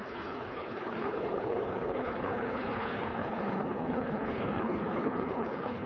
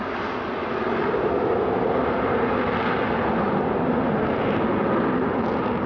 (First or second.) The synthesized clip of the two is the first